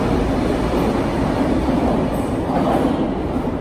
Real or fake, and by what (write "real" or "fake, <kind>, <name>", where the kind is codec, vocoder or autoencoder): real